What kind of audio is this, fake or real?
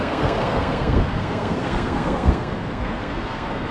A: fake